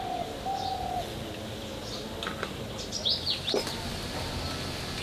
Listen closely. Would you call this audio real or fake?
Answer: real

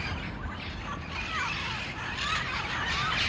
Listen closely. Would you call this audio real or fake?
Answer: real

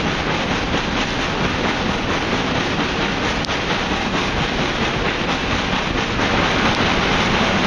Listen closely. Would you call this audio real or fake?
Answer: real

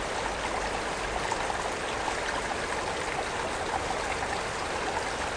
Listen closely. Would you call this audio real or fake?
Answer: real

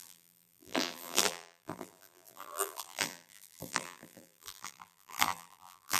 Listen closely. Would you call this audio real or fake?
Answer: fake